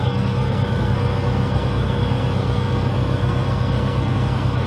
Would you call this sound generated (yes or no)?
yes